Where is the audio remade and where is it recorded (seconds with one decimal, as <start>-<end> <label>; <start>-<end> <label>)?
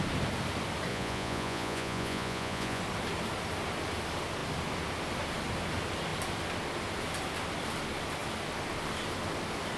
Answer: 0.0-0.9 recorded; 0.9-2.8 remade; 2.8-9.8 recorded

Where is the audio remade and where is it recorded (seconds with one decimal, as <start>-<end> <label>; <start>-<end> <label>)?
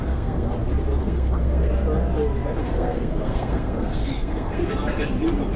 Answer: 0.0-0.5 remade; 0.5-1.0 recorded; 1.0-1.7 remade; 1.7-2.6 recorded; 2.6-4.7 remade; 4.7-5.6 recorded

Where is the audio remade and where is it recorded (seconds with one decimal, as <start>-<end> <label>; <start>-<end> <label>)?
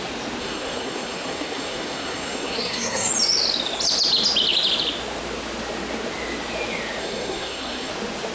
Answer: 0.0-0.4 recorded; 0.4-3.1 remade; 3.1-7.0 recorded; 7.0-7.9 remade; 7.9-8.3 recorded